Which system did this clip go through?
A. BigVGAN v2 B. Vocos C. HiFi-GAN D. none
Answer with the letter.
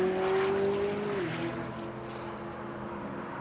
D